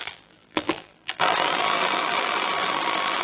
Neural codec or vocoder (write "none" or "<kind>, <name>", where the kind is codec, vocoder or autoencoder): vocoder, BigVGAN v2